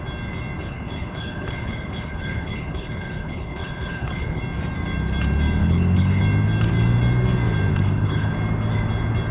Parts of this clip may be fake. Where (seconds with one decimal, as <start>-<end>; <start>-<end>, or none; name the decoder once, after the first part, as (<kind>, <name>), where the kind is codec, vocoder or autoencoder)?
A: 0.6-4.4 (codec, HILCodec); 5.6-6.2; 7.7-8.3